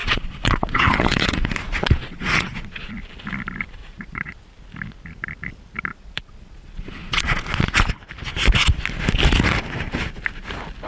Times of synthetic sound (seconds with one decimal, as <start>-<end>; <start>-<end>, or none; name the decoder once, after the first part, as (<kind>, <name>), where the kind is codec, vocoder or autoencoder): 0.0-2.9 (vocoder, Vocos); 3.8-4.5; 5.9-7.9